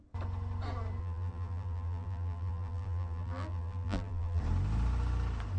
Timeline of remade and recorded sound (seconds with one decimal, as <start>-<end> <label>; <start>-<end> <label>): 0.0-1.0 recorded; 1.0-4.4 remade; 4.4-5.6 recorded